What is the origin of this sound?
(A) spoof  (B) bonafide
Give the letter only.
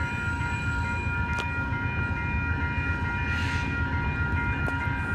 B